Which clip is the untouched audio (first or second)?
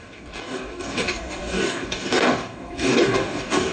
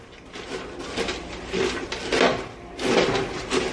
second